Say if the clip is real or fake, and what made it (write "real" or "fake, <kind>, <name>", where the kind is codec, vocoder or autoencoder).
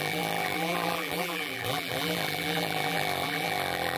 fake, vocoder, BigVGAN v2